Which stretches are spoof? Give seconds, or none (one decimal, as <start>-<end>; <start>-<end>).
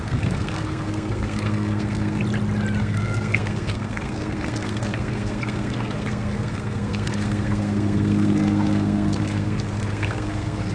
0.0-2.2; 2.8-10.7